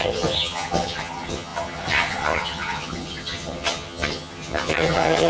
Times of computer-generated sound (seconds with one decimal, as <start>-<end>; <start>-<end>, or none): 0.0-5.3